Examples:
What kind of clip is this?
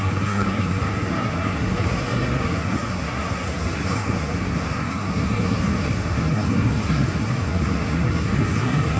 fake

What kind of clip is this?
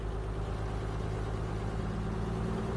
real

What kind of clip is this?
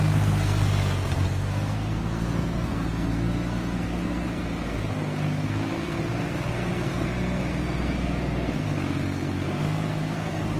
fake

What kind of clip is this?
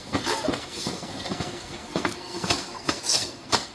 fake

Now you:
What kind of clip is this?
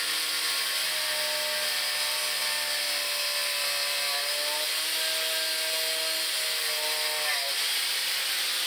real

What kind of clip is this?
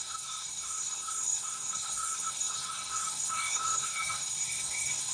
fake